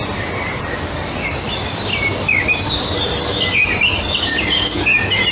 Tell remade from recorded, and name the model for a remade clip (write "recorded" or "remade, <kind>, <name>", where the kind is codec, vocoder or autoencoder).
recorded